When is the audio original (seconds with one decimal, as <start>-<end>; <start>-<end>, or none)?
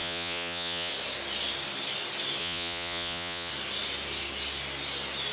0.9-2.4; 3.5-5.3